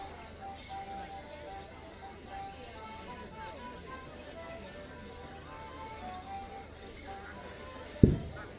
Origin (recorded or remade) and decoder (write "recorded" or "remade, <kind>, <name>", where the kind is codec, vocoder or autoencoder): recorded